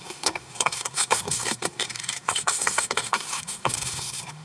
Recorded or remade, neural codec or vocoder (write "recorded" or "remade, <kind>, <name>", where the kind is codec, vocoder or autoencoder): remade, codec, SNAC